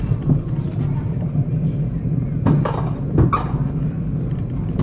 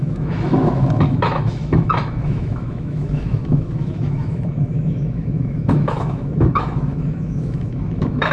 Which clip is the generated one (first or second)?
second